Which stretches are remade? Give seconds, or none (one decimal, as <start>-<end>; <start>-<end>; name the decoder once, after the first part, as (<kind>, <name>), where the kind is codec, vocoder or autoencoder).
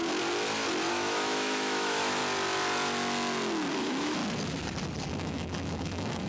0.9-2.2 (autoencoder, DAC-VAE); 3.7-4.2; 5.1-6.3